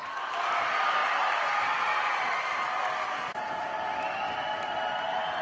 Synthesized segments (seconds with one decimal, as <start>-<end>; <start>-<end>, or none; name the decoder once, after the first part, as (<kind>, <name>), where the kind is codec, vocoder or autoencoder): none